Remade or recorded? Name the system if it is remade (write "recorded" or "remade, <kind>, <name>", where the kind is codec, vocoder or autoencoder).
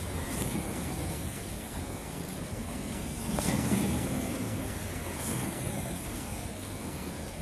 remade, codec, SNAC